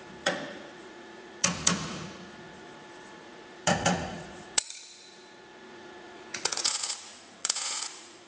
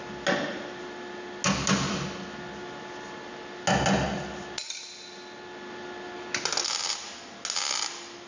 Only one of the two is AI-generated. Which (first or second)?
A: first